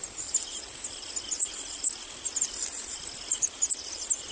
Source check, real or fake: real